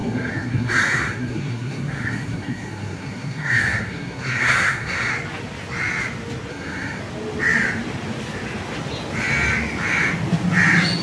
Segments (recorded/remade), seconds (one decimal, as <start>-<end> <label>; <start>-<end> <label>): 0.0-5.1 remade; 5.1-6.5 recorded; 6.5-7.0 remade; 7.0-11.0 recorded